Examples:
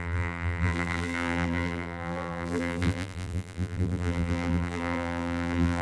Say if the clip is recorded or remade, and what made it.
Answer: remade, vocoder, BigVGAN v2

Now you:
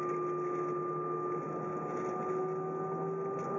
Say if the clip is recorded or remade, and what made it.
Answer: recorded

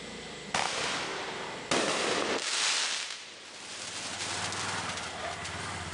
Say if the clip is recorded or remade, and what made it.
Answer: recorded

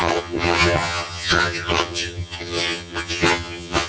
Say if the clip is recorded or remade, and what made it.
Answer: remade, vocoder, HiFi-GAN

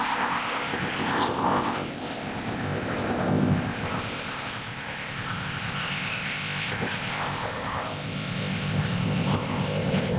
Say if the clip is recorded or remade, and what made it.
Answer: remade, codec, ZipCodec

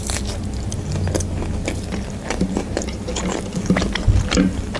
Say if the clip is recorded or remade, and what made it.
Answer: recorded